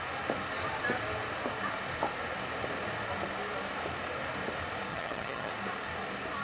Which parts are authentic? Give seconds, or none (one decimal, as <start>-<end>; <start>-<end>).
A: 0.0-4.9; 5.5-6.4